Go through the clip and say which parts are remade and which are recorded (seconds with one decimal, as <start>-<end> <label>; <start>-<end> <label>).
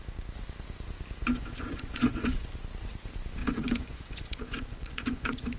0.0-1.2 recorded; 1.2-2.6 remade; 2.6-3.4 recorded; 3.4-5.6 remade